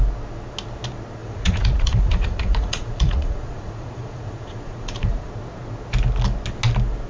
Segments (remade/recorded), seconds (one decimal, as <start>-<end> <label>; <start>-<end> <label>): 0.0-1.2 recorded; 1.2-5.3 remade; 5.3-7.1 recorded